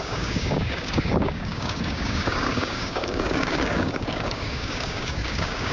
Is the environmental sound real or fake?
fake